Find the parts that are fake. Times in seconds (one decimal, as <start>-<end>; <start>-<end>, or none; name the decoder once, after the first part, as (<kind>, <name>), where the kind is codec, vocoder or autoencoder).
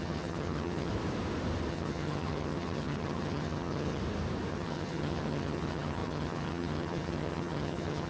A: 0.0-0.9 (vocoder, HiFi-GAN); 1.7-4.0; 4.5-8.1